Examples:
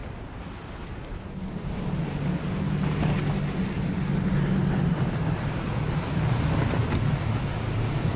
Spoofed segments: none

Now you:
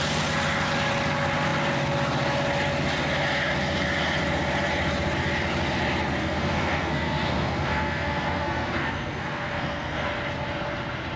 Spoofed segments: 6.2-10.1

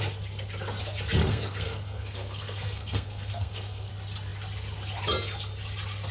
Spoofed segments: 1.2-3.9

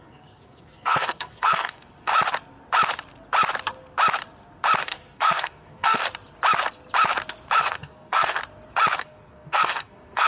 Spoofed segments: 0.0-2.1; 4.8-6.0; 7.6-8.4; 9.0-10.3

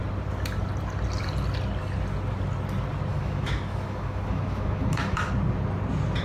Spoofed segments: 3.1-5.3

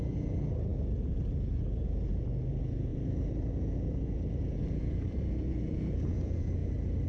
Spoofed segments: 0.0-6.6